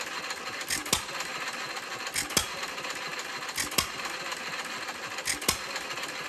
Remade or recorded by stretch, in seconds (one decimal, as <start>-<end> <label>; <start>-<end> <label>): 0.0-6.3 recorded